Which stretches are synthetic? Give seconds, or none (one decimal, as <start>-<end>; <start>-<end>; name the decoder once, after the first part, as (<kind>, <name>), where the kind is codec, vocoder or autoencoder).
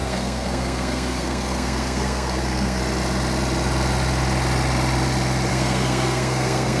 0.0-2.8 (codec, SNAC); 5.5-6.8